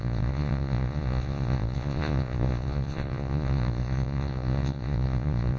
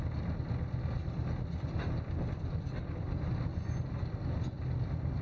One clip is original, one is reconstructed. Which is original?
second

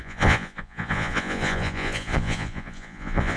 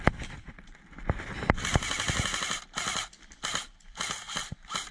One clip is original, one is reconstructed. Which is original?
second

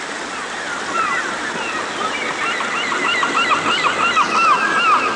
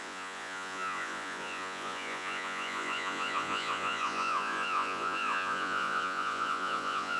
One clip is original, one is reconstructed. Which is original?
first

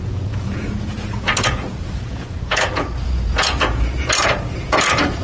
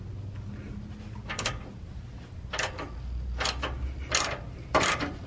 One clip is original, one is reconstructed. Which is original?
second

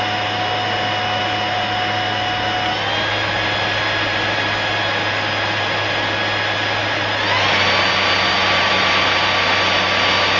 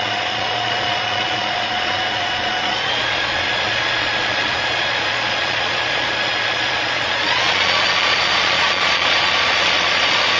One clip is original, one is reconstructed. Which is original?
first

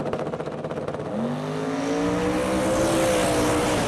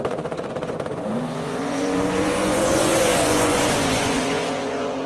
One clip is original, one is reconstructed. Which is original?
first